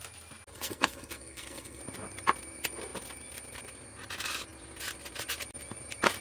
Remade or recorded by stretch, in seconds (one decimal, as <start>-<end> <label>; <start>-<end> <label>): 0.0-0.5 recorded; 0.5-1.8 remade; 1.8-6.2 recorded